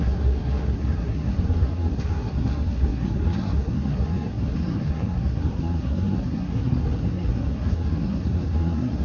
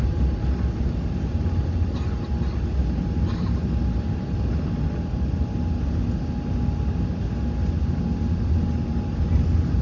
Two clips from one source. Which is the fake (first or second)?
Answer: first